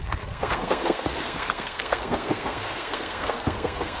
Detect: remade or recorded remade